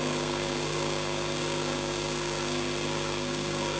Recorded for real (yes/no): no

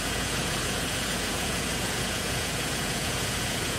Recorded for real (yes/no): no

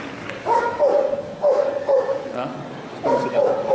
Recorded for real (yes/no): no